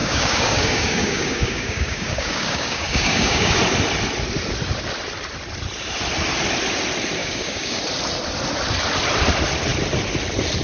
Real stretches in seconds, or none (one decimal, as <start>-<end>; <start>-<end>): 3.6-7.2; 7.8-10.6

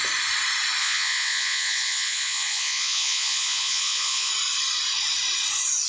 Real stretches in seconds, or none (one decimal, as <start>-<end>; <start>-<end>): 0.0-0.8; 4.3-5.9